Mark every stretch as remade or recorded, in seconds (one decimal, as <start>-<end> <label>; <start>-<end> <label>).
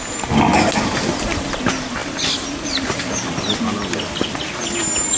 0.0-5.2 recorded